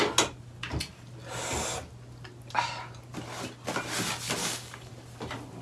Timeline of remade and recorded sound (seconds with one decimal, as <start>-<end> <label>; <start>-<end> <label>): 0.0-4.4 recorded; 4.4-4.9 remade; 4.9-5.6 recorded

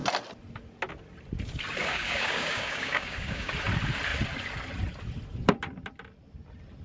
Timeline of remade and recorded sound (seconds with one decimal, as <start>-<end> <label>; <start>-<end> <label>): 0.0-1.8 recorded; 1.8-3.5 remade; 3.5-6.8 recorded

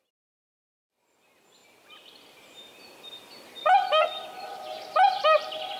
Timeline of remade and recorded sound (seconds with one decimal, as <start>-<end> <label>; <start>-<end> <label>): 0.0-5.8 recorded

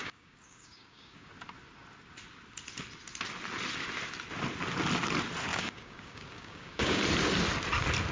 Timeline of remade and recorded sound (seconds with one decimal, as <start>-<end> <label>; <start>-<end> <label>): 0.0-1.3 remade; 1.3-5.5 recorded; 5.5-7.0 remade; 7.0-8.1 recorded

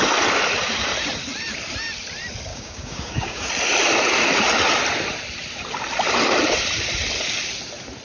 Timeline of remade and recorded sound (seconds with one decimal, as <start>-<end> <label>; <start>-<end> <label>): 0.0-2.5 recorded; 2.5-3.5 remade; 3.5-8.0 recorded